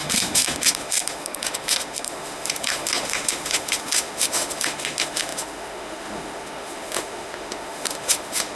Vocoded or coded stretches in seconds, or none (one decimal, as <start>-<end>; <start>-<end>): 0.0-8.6